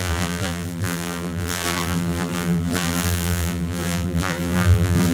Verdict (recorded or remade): remade